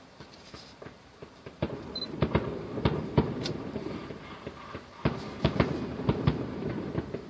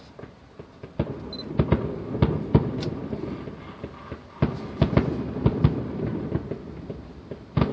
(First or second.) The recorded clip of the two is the second